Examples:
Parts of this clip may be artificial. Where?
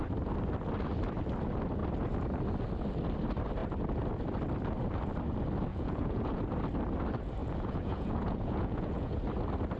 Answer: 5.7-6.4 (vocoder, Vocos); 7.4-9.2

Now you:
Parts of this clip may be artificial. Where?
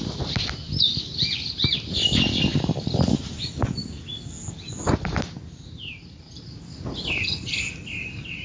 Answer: 2.5-3.5 (vocoder, BigVGAN v2)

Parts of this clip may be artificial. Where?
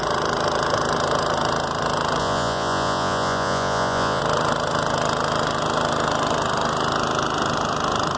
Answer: 2.2-4.2 (vocoder, Vocos)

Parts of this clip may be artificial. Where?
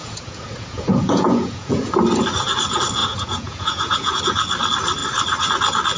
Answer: 0.0-1.9 (vocoder, Vocos); 3.0-4.2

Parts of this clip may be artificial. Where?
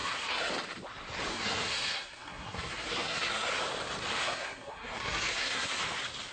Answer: 0.0-0.5 (codec, SNAC); 1.3-3.5; 4.2-5.8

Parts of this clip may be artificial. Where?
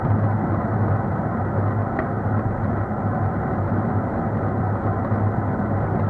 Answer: none